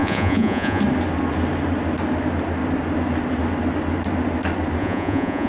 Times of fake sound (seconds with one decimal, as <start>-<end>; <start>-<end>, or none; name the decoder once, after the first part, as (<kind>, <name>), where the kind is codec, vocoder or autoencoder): 0.0-0.8 (vocoder, Vocos); 4.8-5.5